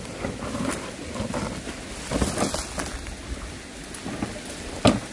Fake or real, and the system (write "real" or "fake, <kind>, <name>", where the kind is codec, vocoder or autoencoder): real